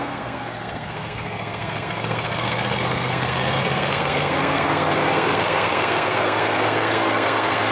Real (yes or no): no